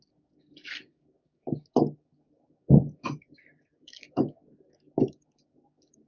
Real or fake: fake